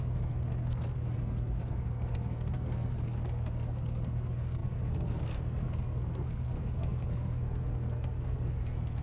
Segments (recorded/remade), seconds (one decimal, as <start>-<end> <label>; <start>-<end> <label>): 0.0-9.0 remade